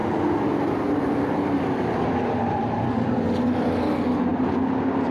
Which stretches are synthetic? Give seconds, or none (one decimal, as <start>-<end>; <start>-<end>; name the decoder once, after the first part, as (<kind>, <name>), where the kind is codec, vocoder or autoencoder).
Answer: 0.0-3.1 (vocoder, BigVGAN v2)